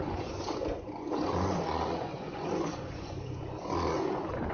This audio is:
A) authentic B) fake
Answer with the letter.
B